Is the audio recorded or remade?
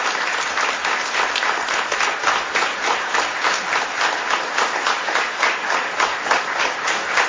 recorded